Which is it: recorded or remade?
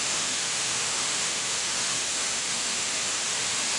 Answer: remade